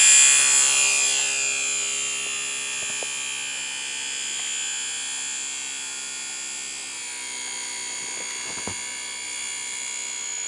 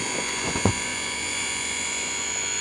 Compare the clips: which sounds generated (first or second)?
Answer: second